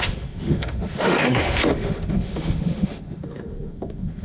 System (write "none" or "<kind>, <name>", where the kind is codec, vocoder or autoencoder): autoencoder, DAC-VAE